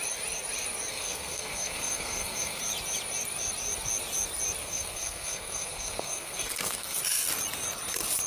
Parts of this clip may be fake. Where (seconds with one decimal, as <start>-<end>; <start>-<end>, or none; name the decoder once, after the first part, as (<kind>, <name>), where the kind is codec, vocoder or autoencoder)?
0.9-2.6 (codec, SNAC); 4.6-7.0